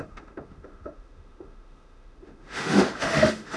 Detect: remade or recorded remade